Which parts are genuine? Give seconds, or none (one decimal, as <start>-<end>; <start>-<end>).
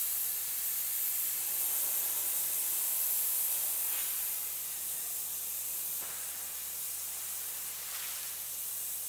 none